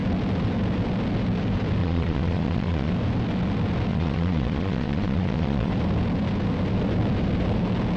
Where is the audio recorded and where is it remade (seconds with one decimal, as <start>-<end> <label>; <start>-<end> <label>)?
0.0-1.8 recorded; 1.8-2.9 remade; 2.9-3.9 recorded; 3.9-5.7 remade; 5.7-8.0 recorded